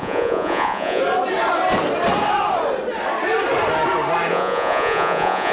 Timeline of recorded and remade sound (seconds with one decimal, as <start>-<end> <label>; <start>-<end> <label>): 0.0-1.0 remade; 1.0-4.3 recorded; 4.3-5.5 remade

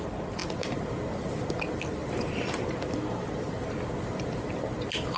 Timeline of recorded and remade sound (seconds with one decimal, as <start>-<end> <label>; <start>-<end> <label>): 0.0-5.2 recorded